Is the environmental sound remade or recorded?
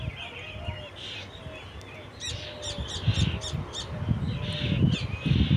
recorded